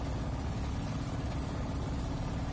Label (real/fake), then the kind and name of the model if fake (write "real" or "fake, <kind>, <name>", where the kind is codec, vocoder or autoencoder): real